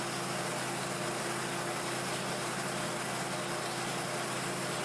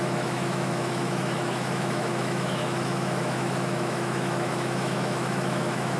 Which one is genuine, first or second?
first